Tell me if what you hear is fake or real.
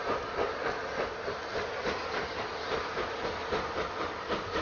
real